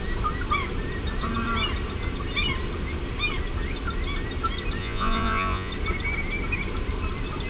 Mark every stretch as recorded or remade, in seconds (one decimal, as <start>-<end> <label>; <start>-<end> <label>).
0.0-4.8 recorded; 4.8-5.7 remade; 5.7-7.5 recorded